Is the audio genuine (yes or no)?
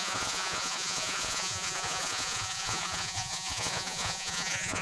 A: no